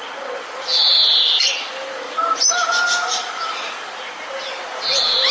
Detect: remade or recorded recorded